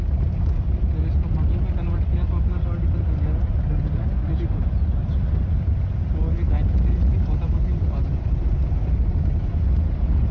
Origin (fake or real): real